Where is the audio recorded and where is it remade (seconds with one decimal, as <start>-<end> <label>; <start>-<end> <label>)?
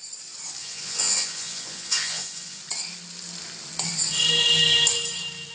0.0-0.6 recorded; 0.6-2.6 remade; 2.6-5.5 recorded